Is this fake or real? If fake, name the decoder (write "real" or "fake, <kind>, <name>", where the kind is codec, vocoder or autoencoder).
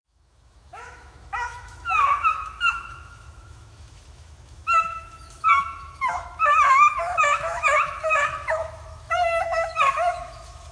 fake, autoencoder, DAC-VAE